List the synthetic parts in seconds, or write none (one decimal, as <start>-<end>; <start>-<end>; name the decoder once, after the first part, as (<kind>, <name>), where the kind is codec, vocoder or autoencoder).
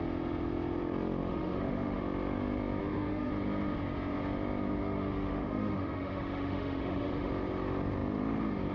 1.3-2.0 (autoencoder, DAC-VAE); 2.8-3.3; 4.8-7.3